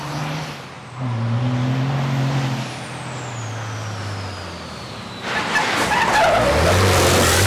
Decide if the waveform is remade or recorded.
recorded